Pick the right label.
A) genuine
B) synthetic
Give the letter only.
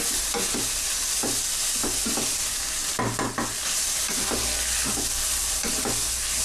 A